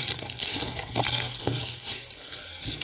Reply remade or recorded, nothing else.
remade